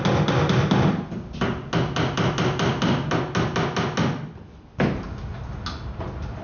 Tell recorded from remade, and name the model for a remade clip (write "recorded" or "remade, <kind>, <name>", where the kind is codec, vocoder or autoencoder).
recorded